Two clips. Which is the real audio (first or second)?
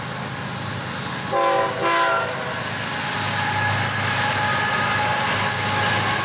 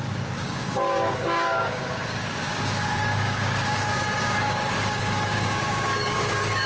first